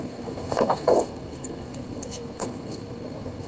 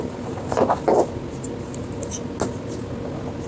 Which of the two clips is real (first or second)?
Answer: second